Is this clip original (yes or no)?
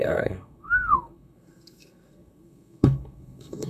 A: no